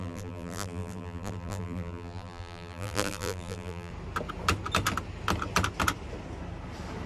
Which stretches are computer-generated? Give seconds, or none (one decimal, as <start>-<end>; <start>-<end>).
0.0-3.9